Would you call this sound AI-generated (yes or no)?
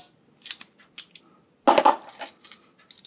no